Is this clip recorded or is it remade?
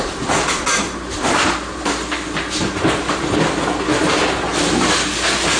recorded